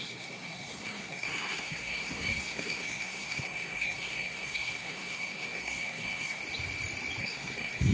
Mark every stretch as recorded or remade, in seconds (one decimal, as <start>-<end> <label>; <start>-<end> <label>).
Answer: 0.0-6.4 remade; 6.4-7.2 recorded; 7.2-7.9 remade